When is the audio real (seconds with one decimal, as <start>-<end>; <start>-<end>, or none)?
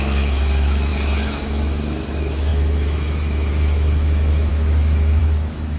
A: none